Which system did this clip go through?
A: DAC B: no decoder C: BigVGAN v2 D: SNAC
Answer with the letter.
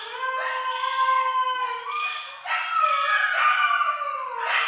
B